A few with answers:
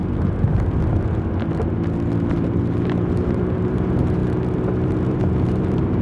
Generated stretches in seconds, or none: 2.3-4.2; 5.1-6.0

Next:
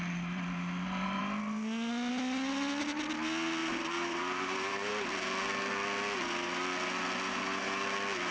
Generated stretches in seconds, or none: 3.6-4.9

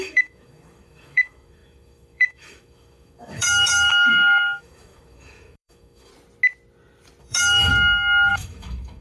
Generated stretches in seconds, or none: 0.0-6.1; 7.2-7.7; 8.3-9.0

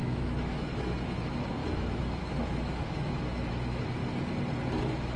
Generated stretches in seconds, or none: 0.0-4.0; 4.8-5.2

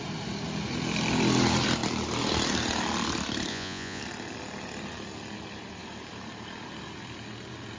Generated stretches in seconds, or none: 3.5-4.0